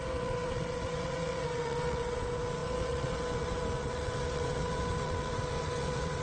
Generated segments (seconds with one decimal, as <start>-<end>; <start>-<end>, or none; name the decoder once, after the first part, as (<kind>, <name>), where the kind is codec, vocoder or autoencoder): 0.0-6.2 (vocoder, WaveNeXt)